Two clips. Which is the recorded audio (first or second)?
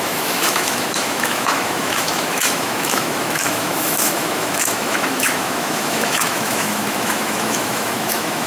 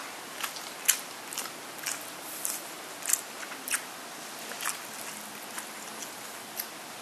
second